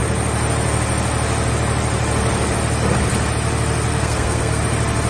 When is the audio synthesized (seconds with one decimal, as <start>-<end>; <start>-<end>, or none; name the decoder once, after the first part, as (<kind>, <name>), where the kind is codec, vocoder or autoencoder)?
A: 3.9-4.6 (codec, SNAC)